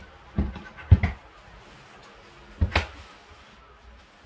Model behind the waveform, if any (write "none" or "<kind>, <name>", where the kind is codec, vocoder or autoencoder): none